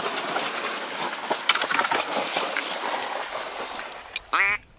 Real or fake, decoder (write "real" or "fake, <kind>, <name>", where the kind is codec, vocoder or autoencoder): real